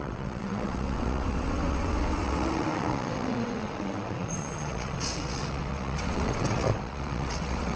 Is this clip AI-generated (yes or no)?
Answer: yes